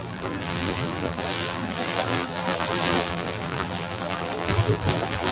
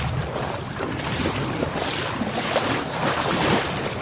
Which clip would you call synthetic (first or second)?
first